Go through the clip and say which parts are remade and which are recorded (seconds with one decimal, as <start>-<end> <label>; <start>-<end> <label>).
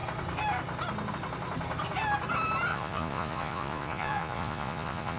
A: 0.0-2.7 recorded; 2.7-5.2 remade